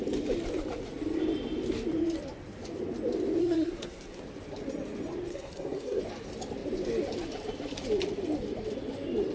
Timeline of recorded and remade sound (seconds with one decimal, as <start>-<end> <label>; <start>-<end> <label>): 0.0-3.4 recorded; 3.4-4.2 remade; 4.2-5.3 recorded; 5.3-6.0 remade; 6.0-9.3 recorded